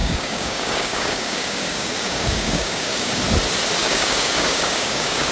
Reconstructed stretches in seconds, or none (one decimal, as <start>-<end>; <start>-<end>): 0.0-3.2; 3.8-5.3